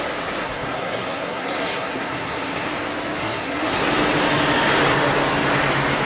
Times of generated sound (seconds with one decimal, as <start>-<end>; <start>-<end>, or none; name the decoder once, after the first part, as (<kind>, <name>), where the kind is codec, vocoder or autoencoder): 0.4-2.7 (codec, SNAC); 3.2-3.9